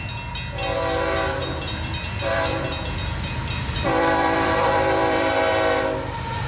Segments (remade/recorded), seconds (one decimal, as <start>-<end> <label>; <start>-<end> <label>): 0.0-1.4 recorded; 1.4-5.3 remade; 5.3-6.5 recorded